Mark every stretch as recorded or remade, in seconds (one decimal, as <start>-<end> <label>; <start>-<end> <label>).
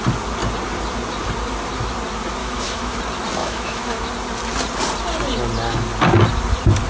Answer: 0.0-2.4 recorded; 2.4-3.0 remade; 3.0-3.4 recorded; 3.4-4.1 remade; 4.1-6.9 recorded